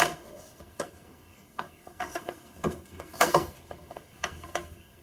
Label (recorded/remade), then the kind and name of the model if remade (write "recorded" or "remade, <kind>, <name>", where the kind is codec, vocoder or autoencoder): remade, codec, SNAC